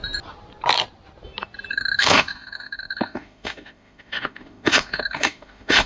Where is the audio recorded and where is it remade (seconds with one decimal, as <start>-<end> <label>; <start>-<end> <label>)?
0.0-1.7 recorded; 1.7-5.9 remade